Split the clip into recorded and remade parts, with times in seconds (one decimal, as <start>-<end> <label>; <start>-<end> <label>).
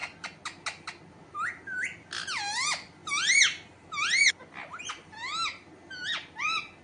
0.0-6.8 recorded